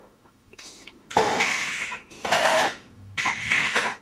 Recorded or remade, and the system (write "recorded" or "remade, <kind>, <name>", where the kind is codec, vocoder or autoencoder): remade, autoencoder, DAC-VAE